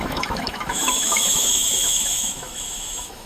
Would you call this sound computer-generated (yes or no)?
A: yes